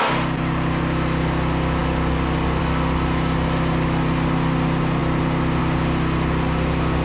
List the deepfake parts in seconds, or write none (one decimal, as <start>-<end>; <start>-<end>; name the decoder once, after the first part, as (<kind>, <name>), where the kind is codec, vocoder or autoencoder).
none